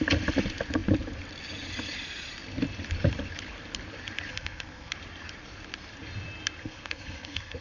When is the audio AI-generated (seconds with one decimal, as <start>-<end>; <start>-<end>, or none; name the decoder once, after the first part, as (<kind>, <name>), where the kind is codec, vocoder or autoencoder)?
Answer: 4.3-4.9 (codec, SNAC); 6.6-7.6